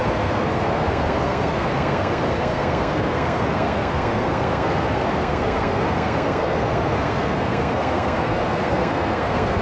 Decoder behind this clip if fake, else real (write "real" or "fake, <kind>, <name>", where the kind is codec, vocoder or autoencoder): fake, codec, SNAC